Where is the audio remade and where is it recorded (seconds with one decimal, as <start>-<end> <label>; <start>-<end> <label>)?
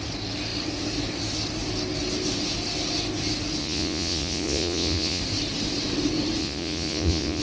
0.0-3.6 recorded; 3.6-5.2 remade; 5.2-6.4 recorded; 6.4-7.4 remade